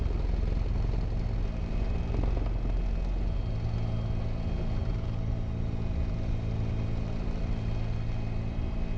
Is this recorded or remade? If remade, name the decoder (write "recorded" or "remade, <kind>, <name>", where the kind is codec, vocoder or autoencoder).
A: recorded